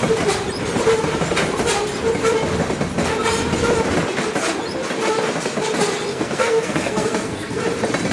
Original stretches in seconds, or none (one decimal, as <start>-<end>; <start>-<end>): 0.0-6.1; 7.6-8.1